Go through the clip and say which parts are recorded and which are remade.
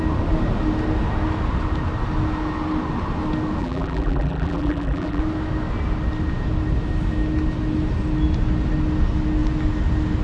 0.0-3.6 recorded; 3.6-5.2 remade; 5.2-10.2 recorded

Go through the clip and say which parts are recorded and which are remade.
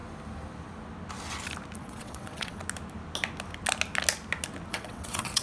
0.0-1.8 recorded; 1.8-2.6 remade; 2.6-4.7 recorded; 4.7-5.4 remade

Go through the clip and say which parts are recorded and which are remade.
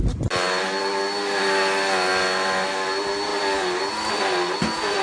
0.0-5.0 recorded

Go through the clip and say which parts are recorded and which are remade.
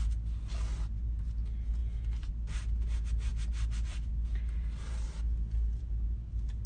0.0-6.7 recorded